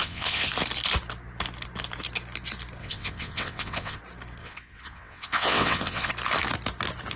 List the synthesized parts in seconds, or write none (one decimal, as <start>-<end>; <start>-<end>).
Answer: 0.0-0.5; 2.8-4.0; 4.4-6.1